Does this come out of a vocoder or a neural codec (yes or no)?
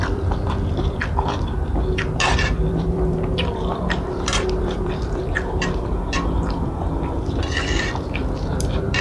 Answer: yes